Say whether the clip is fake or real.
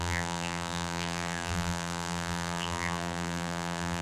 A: fake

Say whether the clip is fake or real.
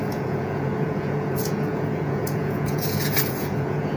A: fake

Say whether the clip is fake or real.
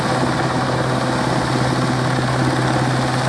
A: real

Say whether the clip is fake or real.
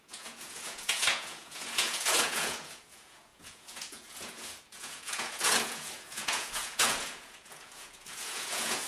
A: fake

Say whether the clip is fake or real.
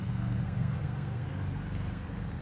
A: fake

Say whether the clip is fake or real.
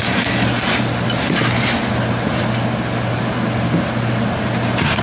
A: real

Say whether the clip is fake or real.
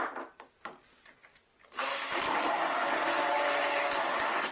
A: real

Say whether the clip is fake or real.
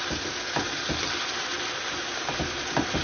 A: real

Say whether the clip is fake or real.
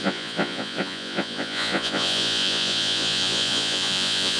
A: fake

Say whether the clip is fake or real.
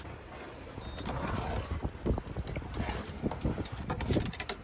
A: real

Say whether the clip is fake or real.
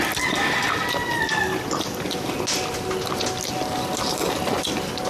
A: real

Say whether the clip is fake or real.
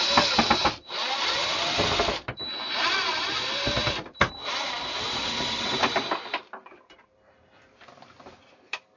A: fake